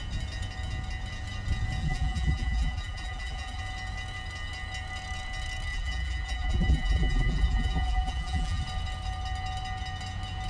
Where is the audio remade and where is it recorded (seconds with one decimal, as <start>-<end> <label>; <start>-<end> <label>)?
0.0-1.8 recorded; 1.8-3.6 remade; 3.6-5.7 recorded; 5.7-8.6 remade; 8.6-10.5 recorded